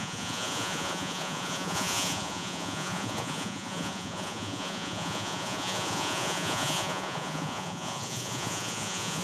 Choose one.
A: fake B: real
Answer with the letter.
A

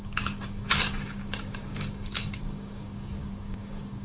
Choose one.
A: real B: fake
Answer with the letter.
B